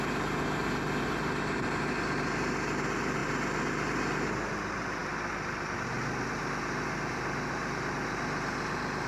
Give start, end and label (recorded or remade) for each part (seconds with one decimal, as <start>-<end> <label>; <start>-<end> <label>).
0.0-9.1 recorded